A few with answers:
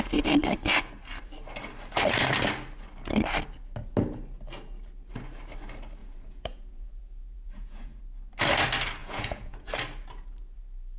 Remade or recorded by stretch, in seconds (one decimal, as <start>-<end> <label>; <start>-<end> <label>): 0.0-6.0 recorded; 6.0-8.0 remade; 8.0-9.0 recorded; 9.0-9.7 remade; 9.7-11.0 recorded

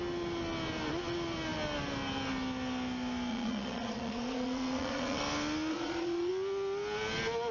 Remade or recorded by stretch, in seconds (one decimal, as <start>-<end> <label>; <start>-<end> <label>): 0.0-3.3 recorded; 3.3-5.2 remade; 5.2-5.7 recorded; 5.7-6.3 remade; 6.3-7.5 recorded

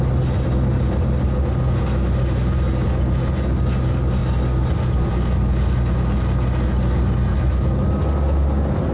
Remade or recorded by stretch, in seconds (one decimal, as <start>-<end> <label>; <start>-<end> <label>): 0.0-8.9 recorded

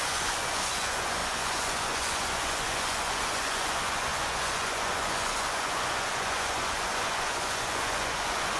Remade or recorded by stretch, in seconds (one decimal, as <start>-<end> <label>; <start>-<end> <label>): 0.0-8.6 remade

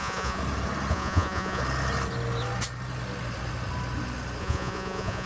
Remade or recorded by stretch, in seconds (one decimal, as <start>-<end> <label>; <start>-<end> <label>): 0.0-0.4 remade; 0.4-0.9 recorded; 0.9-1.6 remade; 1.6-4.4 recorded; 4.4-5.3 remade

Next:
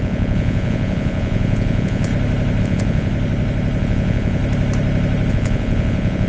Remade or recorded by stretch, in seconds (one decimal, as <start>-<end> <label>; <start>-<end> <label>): 0.0-2.1 remade; 2.1-2.6 recorded; 2.6-3.1 remade; 3.1-3.8 recorded; 3.8-4.4 remade; 4.4-5.3 recorded; 5.3-6.3 remade

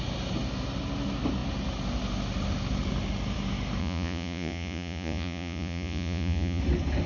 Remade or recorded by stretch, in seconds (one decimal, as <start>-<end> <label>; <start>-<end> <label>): 0.0-3.8 recorded; 3.8-6.6 remade; 6.6-7.1 recorded